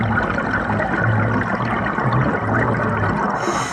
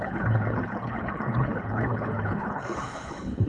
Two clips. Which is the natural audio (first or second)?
first